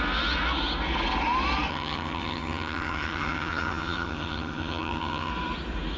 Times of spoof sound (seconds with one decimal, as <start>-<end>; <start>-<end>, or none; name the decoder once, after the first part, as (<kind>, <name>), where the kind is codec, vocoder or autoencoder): 1.7-5.3 (vocoder, HiFi-GAN)